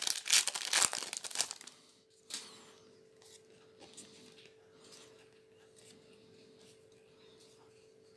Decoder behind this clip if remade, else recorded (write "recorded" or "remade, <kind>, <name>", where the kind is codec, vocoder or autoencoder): recorded